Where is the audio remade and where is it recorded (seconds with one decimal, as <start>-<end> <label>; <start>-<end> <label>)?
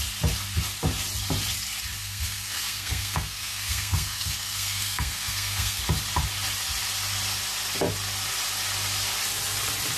0.0-2.0 recorded; 2.0-5.8 remade; 5.8-10.0 recorded